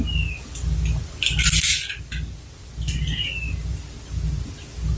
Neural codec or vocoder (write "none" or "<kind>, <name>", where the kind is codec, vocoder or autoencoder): none